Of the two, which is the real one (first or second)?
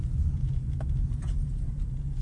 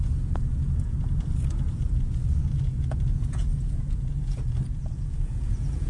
first